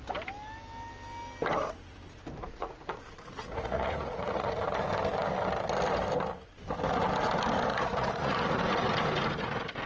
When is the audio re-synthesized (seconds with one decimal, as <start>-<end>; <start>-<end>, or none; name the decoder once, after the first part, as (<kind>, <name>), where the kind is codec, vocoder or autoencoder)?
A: 2.4-4.5 (vocoder, Vocos); 7.7-8.6